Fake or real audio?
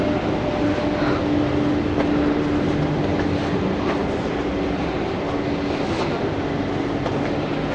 real